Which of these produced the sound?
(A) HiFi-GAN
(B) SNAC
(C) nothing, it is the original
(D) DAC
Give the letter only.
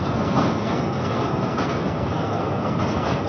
B